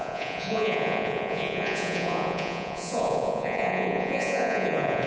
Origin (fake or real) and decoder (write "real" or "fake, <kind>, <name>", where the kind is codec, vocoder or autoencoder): fake, vocoder, Vocos